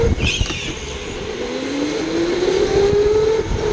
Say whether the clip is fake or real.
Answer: real